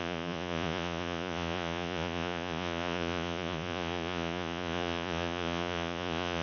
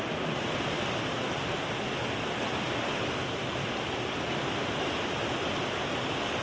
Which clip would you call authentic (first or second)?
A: second